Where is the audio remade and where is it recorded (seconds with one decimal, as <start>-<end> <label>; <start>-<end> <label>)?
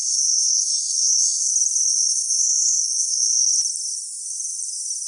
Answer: 0.0-1.5 remade; 1.5-1.9 recorded; 1.9-3.4 remade; 3.4-5.1 recorded